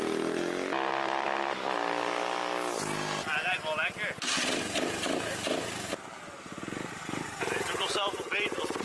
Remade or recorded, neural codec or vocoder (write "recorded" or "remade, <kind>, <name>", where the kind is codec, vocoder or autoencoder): recorded